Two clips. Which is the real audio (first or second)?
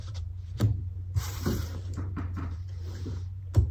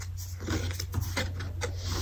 second